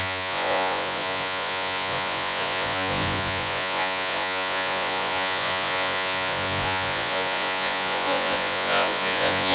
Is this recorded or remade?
remade